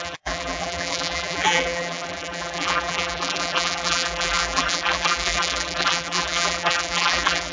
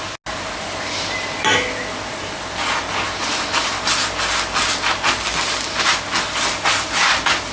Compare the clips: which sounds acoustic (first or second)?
second